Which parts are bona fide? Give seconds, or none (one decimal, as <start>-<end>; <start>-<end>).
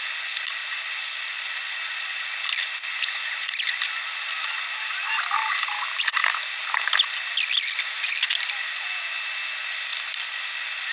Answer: 0.0-0.6; 5.1-9.9; 10.5-10.9